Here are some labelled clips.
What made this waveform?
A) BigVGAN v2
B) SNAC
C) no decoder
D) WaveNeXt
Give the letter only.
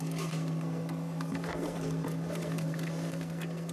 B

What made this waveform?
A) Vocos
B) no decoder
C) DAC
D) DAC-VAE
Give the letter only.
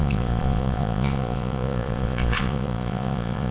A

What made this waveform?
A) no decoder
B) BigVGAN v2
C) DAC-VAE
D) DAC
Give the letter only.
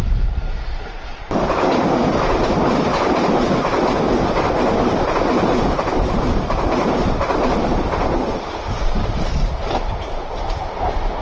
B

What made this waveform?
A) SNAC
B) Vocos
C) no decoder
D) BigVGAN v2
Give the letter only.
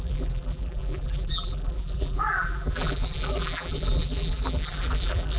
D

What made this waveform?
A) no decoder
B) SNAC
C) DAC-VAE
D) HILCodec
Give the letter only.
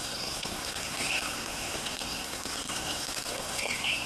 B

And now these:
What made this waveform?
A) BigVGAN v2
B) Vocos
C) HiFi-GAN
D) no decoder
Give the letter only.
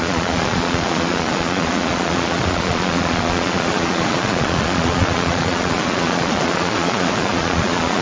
B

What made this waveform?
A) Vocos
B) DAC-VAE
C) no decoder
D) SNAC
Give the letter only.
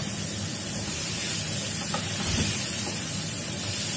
C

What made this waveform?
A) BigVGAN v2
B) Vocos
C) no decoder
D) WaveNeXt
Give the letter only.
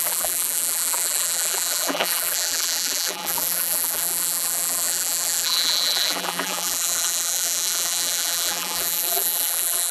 A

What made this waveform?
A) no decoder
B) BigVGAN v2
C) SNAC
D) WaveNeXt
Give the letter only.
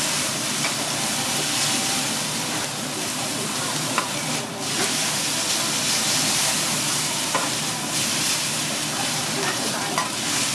B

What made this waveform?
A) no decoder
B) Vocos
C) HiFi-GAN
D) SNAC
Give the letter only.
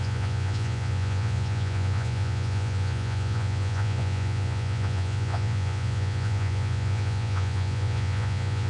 B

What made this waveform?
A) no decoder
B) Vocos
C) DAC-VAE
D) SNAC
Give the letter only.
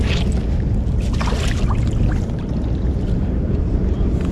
A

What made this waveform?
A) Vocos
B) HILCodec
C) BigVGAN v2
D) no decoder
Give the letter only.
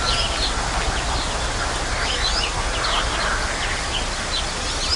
D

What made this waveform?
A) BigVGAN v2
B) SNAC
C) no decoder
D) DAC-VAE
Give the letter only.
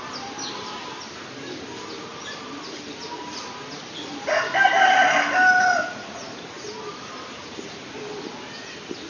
C